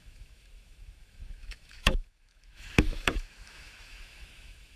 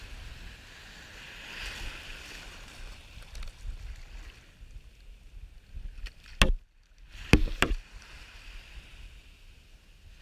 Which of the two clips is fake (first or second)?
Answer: first